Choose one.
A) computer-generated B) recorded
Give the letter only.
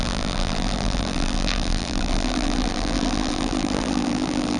A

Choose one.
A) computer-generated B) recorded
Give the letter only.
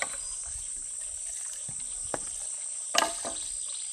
B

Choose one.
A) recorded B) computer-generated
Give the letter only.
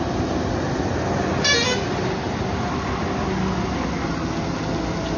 A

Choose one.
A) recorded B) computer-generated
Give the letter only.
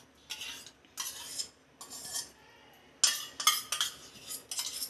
A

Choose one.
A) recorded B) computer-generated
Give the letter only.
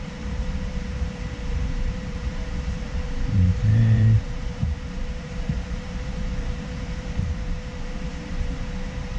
B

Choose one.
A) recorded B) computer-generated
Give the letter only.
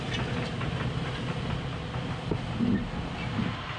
A